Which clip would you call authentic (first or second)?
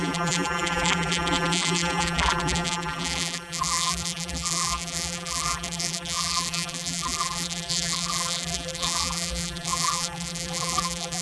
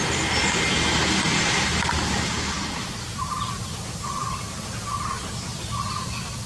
second